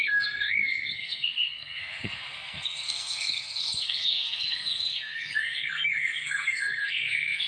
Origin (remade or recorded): remade